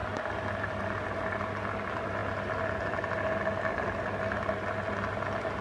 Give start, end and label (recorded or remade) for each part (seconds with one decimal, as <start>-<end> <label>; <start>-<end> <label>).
0.0-5.6 recorded